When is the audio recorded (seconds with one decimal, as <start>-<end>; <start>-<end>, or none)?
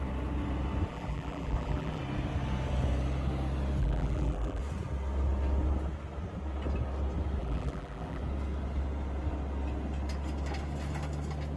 0.0-0.9; 2.0-3.8; 4.6-7.4; 8.2-11.6